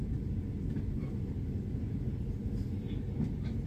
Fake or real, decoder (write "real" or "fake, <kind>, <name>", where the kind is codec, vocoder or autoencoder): real